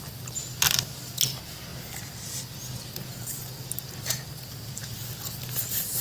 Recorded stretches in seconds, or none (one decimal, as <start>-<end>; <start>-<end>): 0.0-6.0